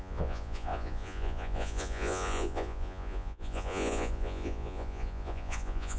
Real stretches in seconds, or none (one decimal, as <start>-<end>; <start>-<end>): none